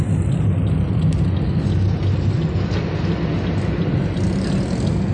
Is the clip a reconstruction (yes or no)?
no